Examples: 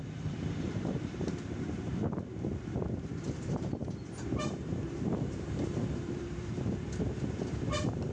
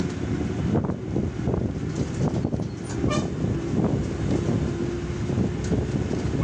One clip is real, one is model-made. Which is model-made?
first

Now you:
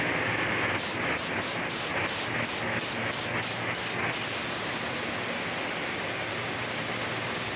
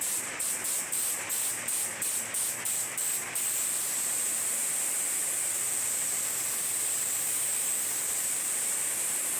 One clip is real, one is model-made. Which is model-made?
second